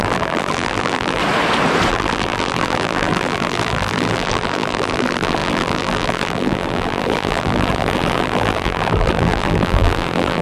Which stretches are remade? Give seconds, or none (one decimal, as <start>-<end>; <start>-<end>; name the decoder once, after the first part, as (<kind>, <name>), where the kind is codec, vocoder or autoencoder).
0.0-1.2 (vocoder, BigVGAN v2); 1.9-10.4